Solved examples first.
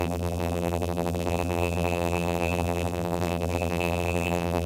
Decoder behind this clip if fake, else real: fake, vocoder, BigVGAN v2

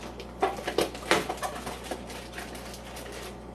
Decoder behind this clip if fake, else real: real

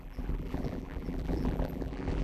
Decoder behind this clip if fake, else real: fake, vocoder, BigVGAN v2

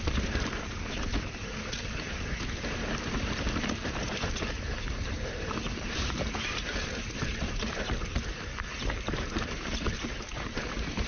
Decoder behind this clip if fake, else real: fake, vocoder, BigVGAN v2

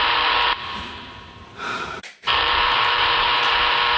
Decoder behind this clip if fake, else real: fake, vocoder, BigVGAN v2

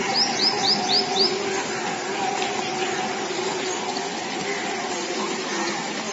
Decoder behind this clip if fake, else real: real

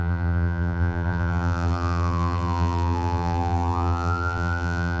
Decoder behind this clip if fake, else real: fake, vocoder, BigVGAN v2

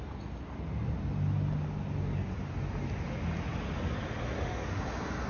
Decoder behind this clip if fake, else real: real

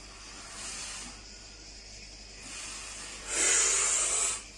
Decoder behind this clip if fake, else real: real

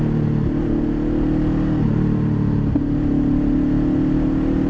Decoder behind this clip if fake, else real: real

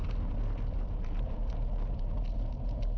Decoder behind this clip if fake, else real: real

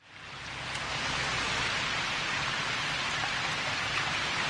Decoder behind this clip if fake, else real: fake, vocoder, BigVGAN v2